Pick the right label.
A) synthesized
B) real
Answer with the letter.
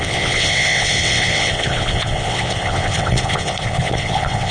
A